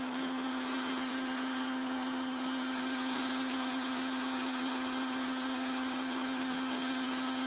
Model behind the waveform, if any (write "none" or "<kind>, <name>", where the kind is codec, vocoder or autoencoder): vocoder, HiFi-GAN